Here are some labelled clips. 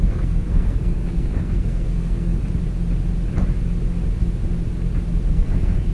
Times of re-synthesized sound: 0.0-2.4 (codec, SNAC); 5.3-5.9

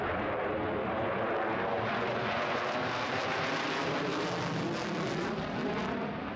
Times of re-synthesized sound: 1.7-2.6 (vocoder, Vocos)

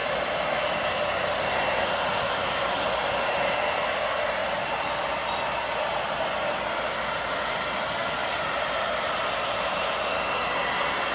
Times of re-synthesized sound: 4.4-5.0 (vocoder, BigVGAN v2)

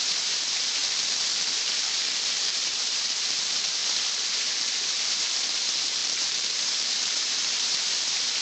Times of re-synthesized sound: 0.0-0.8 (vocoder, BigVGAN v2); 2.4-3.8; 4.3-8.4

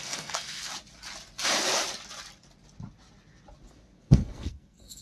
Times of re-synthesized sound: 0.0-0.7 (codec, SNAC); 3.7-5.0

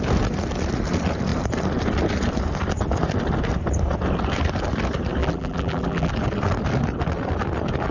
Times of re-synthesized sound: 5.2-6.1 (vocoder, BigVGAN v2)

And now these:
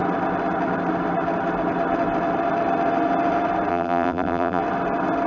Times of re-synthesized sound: 3.7-4.6 (vocoder, BigVGAN v2)

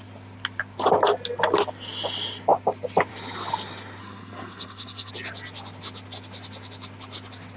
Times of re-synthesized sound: 4.0-5.1 (codec, SNAC)